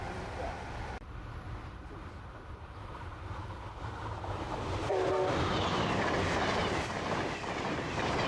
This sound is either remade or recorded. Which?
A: remade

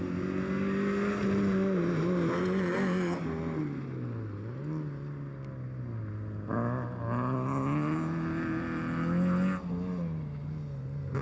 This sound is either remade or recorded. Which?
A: recorded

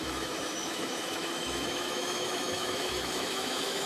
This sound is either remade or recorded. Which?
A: remade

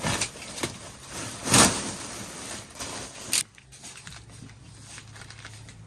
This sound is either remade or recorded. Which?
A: recorded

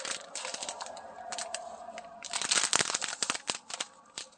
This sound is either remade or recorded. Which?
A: recorded